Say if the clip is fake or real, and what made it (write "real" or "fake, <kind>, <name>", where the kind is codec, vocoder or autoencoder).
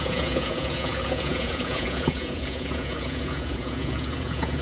fake, vocoder, Vocos